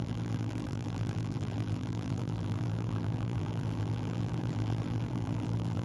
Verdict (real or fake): fake